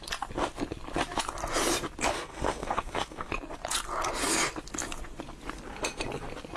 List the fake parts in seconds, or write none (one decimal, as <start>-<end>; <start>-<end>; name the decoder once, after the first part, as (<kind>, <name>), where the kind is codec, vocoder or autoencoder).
2.1-3.3 (codec, SNAC)

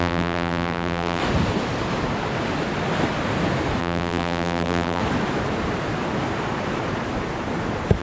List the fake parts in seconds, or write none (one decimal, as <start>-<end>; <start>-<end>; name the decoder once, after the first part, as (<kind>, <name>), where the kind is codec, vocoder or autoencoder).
0.0-1.2 (vocoder, BigVGAN v2); 3.8-5.0

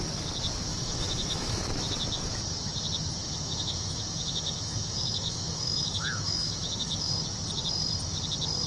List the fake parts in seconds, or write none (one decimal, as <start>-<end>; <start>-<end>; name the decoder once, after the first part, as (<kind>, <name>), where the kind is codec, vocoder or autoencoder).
0.7-1.7 (autoencoder, DAC-VAE); 3.2-7.1